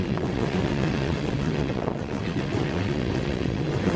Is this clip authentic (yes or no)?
no